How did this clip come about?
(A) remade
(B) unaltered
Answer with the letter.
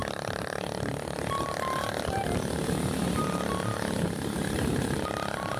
A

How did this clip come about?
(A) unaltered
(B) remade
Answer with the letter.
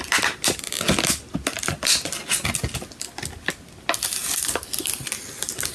A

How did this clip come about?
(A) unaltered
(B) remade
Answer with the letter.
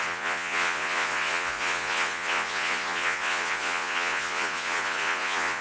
B